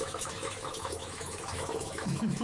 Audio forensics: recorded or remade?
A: remade